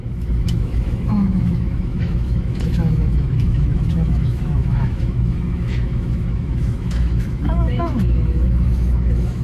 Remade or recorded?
remade